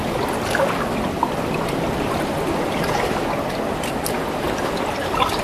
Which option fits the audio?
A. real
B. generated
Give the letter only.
A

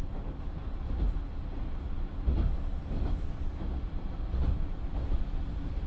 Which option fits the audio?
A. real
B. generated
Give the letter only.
A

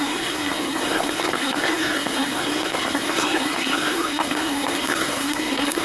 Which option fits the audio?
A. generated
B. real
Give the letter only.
A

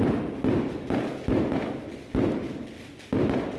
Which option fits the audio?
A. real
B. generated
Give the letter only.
A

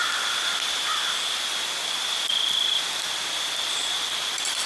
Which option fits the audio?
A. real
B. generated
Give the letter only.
A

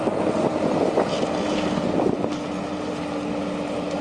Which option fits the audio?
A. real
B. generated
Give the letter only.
A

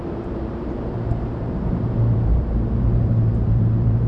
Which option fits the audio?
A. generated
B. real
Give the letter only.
A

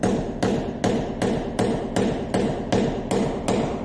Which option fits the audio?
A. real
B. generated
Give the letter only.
A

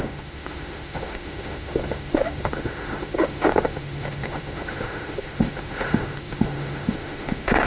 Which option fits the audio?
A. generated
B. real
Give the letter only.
A